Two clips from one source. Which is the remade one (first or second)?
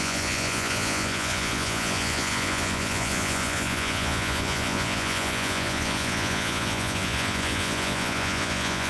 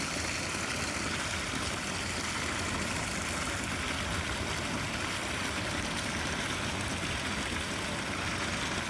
first